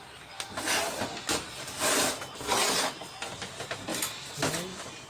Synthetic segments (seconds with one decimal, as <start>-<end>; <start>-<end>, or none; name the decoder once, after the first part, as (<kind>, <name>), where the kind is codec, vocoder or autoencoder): none